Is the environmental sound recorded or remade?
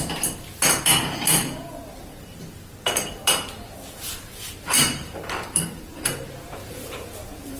remade